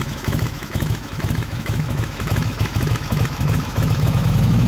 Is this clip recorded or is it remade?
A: remade